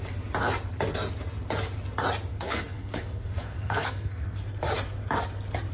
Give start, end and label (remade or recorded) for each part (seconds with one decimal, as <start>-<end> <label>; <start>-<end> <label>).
0.0-2.3 recorded; 2.3-4.6 remade; 4.6-5.7 recorded